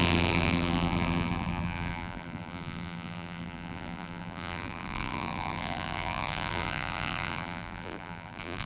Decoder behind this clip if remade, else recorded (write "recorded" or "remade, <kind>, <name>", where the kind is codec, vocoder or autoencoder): remade, vocoder, BigVGAN v2